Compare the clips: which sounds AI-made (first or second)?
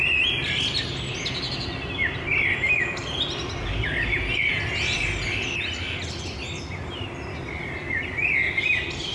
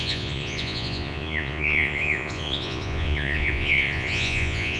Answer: second